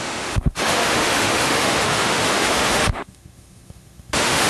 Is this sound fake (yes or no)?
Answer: yes